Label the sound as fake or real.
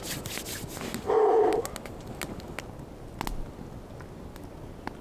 real